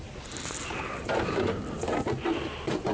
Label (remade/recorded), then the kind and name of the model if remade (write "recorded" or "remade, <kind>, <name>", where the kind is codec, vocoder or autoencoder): recorded